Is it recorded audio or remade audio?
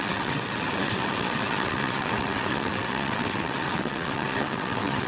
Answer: remade